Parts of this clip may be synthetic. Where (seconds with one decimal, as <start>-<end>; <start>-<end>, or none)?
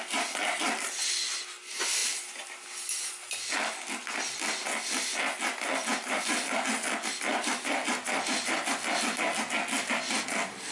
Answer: none